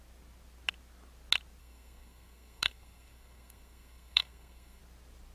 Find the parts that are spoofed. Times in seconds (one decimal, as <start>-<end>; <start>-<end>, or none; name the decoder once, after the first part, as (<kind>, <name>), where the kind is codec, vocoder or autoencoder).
1.6-4.8 (codec, SNAC)